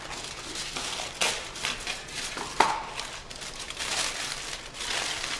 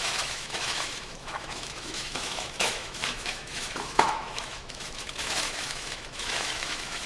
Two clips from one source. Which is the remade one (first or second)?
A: second